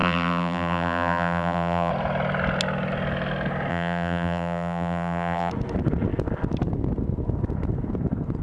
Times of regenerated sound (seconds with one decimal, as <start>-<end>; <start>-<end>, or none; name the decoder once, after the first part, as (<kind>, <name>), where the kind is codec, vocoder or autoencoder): 0.0-1.9 (vocoder, BigVGAN v2); 3.7-5.5